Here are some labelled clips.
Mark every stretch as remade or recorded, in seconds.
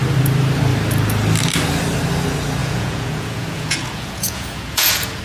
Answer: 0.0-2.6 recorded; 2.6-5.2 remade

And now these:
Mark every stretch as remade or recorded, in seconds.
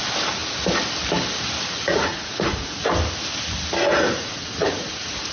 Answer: 0.0-1.9 recorded; 1.9-2.9 remade; 2.9-3.9 recorded; 3.9-5.3 remade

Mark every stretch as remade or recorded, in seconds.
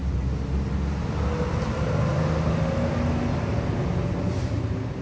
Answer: 0.0-5.0 recorded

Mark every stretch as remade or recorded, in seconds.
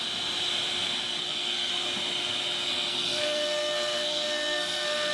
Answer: 0.0-1.2 recorded; 1.2-1.7 remade; 1.7-2.7 recorded; 2.7-5.1 remade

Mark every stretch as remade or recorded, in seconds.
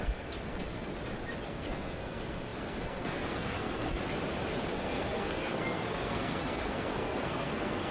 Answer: 0.0-0.9 remade; 0.9-1.5 recorded; 1.5-4.0 remade; 4.0-4.7 recorded; 4.7-7.9 remade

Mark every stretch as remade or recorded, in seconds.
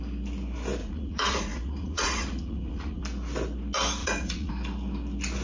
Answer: 0.0-0.8 recorded; 0.8-3.0 remade; 3.0-4.0 recorded; 4.0-4.5 remade; 4.5-5.4 recorded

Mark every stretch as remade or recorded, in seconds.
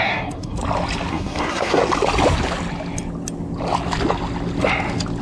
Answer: 0.0-0.6 remade; 0.6-1.1 recorded; 1.1-1.8 remade; 1.8-5.2 recorded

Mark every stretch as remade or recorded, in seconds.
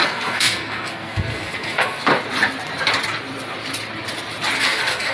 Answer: 0.0-2.1 remade; 2.1-4.6 recorded; 4.6-5.1 remade